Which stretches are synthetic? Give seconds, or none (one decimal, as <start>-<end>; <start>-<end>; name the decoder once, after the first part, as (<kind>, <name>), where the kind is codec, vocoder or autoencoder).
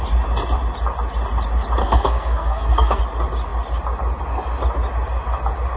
1.8-3.0 (codec, SNAC)